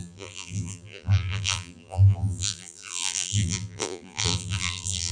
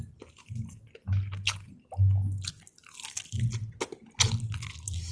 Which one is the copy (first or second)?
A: first